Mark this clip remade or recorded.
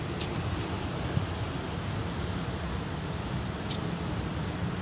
recorded